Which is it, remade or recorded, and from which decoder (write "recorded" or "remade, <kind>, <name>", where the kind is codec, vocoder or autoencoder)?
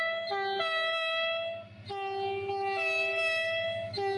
recorded